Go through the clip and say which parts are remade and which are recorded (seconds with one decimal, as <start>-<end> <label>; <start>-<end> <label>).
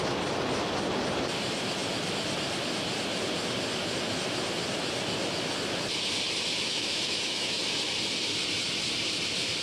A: 0.0-6.5 recorded; 6.5-7.6 remade; 7.6-9.6 recorded